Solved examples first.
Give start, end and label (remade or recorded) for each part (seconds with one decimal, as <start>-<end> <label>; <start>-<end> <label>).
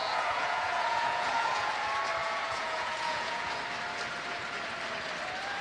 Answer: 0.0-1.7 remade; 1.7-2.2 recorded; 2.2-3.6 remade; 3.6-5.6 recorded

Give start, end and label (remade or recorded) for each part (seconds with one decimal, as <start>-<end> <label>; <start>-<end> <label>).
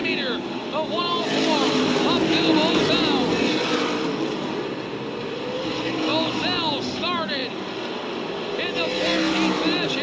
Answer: 0.0-10.0 recorded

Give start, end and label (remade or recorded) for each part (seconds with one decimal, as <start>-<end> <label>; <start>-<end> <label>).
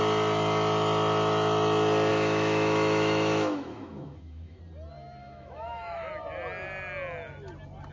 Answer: 0.0-2.1 recorded; 2.1-4.6 remade; 4.6-5.2 recorded; 5.2-6.1 remade; 6.1-7.9 recorded